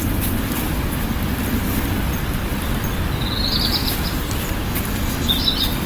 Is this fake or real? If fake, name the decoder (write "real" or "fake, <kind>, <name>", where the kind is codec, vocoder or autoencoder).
real